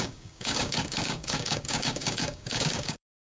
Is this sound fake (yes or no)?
yes